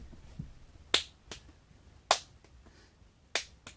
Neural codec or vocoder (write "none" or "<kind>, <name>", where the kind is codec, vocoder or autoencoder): none